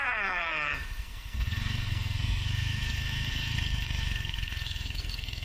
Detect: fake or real fake